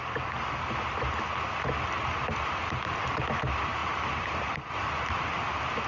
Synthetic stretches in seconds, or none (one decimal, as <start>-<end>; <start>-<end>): 3.8-4.3